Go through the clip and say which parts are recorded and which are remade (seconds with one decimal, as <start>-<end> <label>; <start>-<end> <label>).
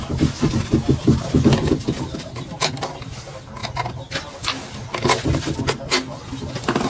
0.0-6.9 recorded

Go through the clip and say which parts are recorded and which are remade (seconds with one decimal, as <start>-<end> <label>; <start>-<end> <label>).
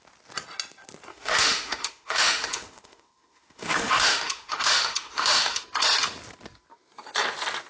0.0-1.1 recorded; 1.1-5.6 remade; 5.6-7.7 recorded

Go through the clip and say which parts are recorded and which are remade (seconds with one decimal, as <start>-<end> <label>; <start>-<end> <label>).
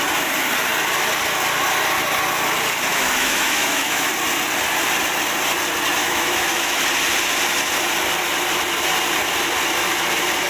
0.0-2.9 recorded; 2.9-4.1 remade; 4.1-6.0 recorded; 6.0-6.8 remade; 6.8-10.5 recorded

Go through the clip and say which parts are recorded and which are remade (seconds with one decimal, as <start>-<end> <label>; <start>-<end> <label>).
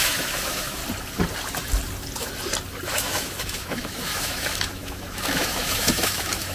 0.0-0.8 remade; 0.8-2.9 recorded; 2.9-6.5 remade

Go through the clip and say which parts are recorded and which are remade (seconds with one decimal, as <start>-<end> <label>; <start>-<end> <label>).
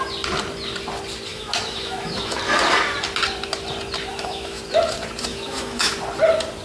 0.0-1.3 recorded; 1.3-2.4 remade; 2.4-4.1 recorded; 4.1-4.6 remade; 4.6-5.3 recorded; 5.3-5.9 remade; 5.9-6.6 recorded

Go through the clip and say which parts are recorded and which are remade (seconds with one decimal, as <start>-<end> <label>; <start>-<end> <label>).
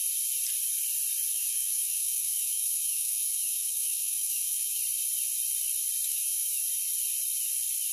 0.0-1.3 recorded; 1.3-4.8 remade; 4.8-6.1 recorded; 6.1-6.6 remade; 6.6-7.9 recorded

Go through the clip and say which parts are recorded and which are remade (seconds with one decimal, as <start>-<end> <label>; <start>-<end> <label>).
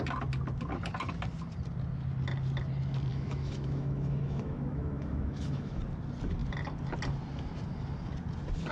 0.0-3.1 recorded; 3.1-5.8 remade; 5.8-8.7 recorded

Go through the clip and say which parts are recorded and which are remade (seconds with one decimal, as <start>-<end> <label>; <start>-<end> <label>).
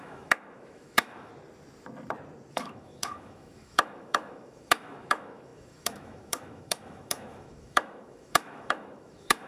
0.0-1.3 remade; 1.3-2.5 recorded; 2.5-9.5 remade